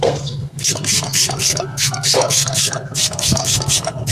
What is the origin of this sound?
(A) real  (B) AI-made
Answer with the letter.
B